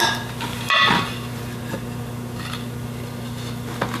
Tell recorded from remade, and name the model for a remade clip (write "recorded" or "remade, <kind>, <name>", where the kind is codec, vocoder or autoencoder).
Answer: recorded